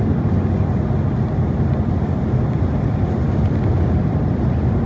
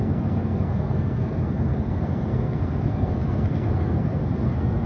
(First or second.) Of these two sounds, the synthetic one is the second